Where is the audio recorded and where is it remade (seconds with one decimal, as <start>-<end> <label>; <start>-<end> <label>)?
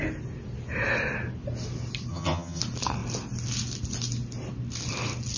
0.0-2.1 recorded; 2.1-2.6 remade; 2.6-5.4 recorded